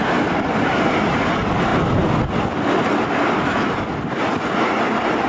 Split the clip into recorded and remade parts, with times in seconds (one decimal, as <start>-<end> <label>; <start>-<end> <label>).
0.0-5.3 recorded